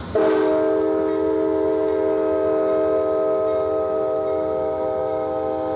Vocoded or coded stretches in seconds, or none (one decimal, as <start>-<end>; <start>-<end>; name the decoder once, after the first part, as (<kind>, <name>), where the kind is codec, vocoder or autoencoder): none